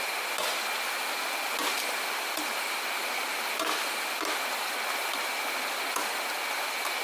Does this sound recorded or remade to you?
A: recorded